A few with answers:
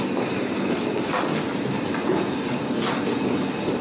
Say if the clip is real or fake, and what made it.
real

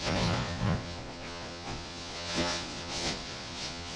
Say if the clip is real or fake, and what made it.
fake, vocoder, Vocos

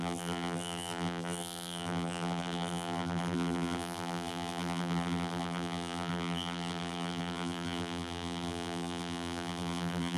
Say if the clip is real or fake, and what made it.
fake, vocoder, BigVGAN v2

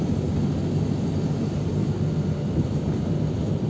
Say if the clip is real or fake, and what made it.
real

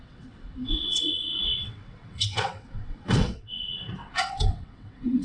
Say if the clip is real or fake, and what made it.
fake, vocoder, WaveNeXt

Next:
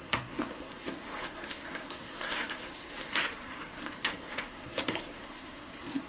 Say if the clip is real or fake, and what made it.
fake, codec, SNAC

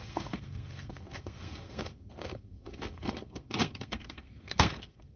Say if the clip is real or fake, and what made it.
fake, codec, SNAC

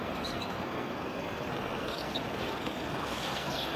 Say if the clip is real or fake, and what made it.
fake, codec, SNAC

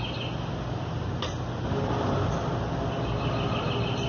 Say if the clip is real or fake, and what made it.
real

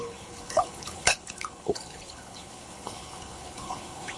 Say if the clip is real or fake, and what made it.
fake, codec, HILCodec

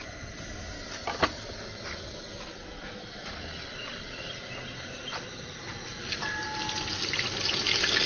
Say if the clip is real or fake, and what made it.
real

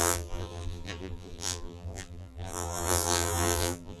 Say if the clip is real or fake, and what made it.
fake, vocoder, BigVGAN v2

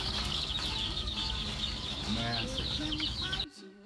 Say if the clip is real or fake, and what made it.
fake, codec, DAC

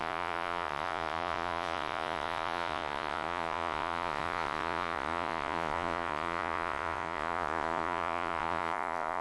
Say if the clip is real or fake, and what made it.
fake, vocoder, Vocos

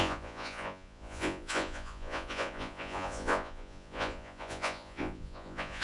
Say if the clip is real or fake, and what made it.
fake, vocoder, Vocos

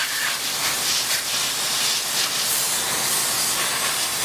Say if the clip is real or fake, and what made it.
real